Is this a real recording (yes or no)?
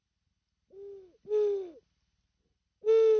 yes